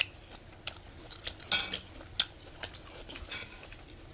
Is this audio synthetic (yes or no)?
no